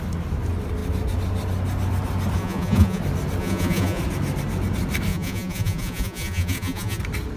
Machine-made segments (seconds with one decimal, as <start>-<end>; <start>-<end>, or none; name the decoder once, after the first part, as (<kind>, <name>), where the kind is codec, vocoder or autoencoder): 2.4-3.0 (vocoder, Vocos); 3.4-4.0; 5.1-7.0